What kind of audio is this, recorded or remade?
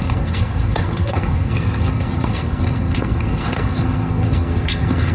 remade